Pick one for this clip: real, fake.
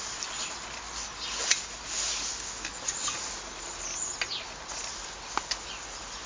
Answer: real